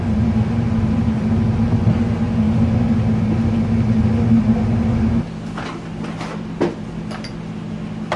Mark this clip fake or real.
real